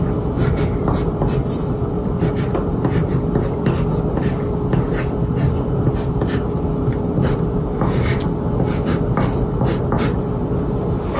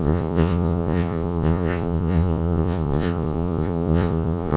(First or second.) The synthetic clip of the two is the second